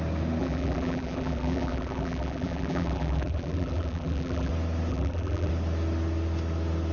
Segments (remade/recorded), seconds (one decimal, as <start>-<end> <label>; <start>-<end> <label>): 0.0-0.4 recorded; 0.4-4.5 remade; 4.5-4.9 recorded; 4.9-5.5 remade; 5.5-6.9 recorded